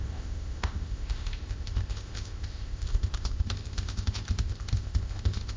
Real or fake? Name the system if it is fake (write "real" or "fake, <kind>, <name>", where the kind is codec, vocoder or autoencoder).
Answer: fake, codec, ZipCodec